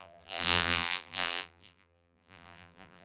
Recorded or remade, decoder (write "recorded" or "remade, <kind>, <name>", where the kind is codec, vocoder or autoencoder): remade, vocoder, BigVGAN v2